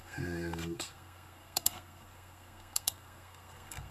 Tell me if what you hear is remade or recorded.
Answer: remade